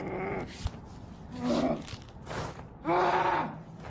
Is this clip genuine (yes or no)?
yes